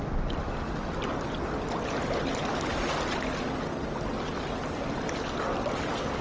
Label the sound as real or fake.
real